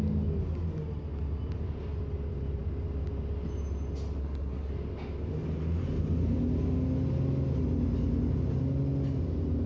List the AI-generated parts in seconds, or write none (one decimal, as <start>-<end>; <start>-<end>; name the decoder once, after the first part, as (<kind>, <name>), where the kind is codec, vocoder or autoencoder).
4.2-4.7 (codec, SNAC)